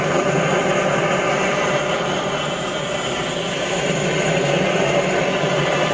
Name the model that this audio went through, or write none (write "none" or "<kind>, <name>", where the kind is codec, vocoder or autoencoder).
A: none